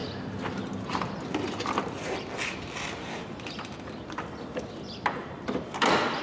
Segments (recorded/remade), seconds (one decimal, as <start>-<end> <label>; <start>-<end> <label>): 0.0-6.2 recorded